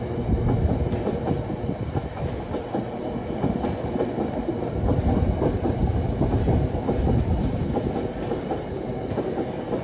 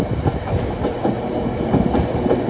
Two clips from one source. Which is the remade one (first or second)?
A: first